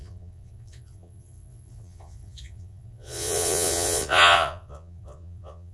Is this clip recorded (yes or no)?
no